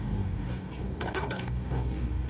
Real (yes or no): no